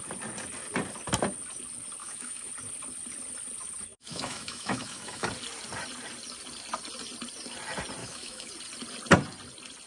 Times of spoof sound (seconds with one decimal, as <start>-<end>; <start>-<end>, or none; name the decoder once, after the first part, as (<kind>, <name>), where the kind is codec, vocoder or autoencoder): 2.0-2.5 (autoencoder, DAC-VAE); 3.9-5.3; 8.0-8.5